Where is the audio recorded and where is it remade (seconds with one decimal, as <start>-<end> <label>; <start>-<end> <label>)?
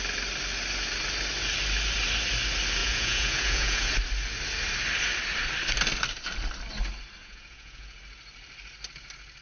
0.0-2.8 recorded; 2.8-3.9 remade; 3.9-7.2 recorded; 7.2-8.0 remade; 8.0-9.4 recorded